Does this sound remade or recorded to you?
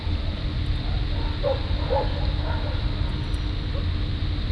recorded